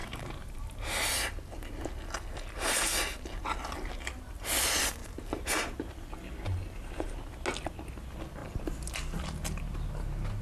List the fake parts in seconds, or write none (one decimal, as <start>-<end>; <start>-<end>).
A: 0.0-0.6; 5.0-5.9